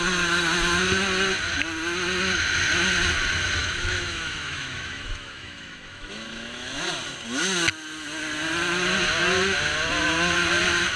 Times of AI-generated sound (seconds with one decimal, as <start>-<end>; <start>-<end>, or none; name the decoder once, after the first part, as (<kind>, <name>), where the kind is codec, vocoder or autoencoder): 3.6-6.9 (autoencoder, DAC-VAE)